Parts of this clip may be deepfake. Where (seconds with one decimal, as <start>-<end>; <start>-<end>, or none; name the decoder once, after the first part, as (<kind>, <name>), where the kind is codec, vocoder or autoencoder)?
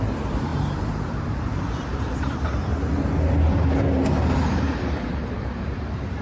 0.0-2.7 (vocoder, BigVGAN v2); 4.1-6.2